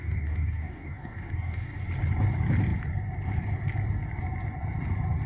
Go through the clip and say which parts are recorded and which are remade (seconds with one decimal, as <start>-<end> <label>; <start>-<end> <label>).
0.0-1.8 remade; 1.8-5.3 recorded